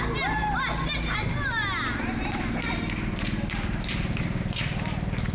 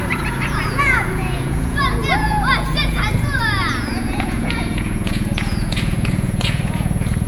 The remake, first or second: second